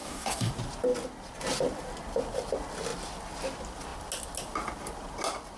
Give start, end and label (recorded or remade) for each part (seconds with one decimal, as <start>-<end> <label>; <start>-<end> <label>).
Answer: 0.0-0.5 remade; 0.5-5.6 recorded